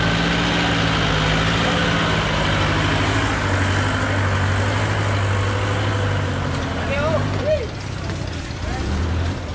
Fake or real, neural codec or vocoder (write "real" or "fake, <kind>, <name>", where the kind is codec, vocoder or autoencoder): real